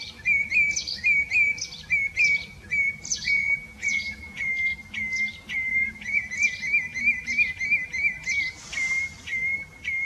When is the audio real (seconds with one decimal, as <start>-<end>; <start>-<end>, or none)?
0.0-3.1; 4.5-5.7; 6.3-10.0